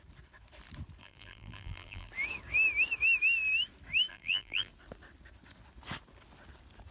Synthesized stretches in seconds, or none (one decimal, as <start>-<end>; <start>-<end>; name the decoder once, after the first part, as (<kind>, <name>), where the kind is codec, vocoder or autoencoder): 1.0-2.1 (vocoder, BigVGAN v2); 4.1-4.7